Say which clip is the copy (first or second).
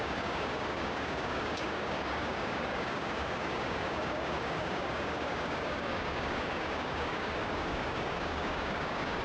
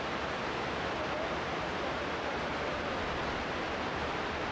first